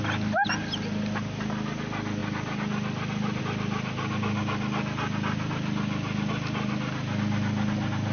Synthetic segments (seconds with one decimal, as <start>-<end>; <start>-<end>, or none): none